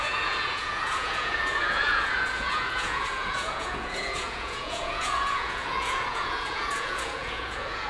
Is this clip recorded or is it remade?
remade